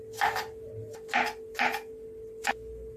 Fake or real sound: real